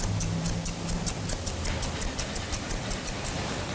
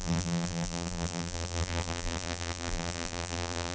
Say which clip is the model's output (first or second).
second